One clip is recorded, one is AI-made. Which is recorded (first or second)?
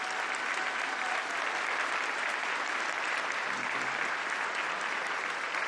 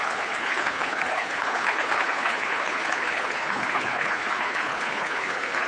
first